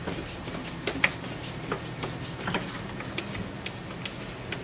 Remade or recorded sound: recorded